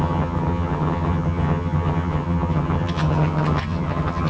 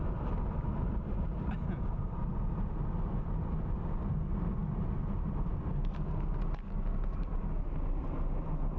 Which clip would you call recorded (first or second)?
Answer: second